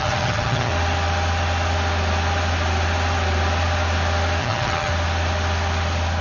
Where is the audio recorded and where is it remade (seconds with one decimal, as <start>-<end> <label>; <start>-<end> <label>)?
0.0-0.7 remade; 0.7-4.4 recorded; 4.4-4.9 remade; 4.9-6.2 recorded